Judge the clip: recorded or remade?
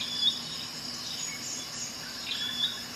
recorded